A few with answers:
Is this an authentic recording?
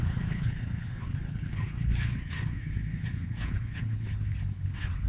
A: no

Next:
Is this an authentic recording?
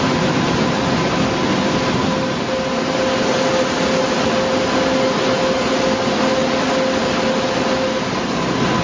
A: yes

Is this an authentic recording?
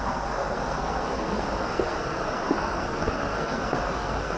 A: no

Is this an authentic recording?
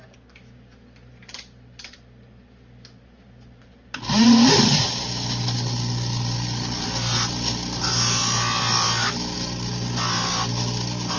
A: yes